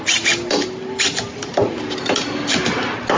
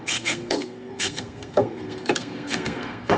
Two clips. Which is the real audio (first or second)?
first